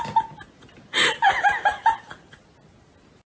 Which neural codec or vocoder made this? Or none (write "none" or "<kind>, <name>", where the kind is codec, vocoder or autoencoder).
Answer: none